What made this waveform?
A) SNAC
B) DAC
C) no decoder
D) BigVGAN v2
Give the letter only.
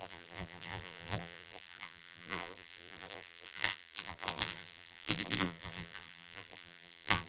D